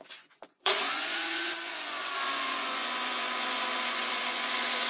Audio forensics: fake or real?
fake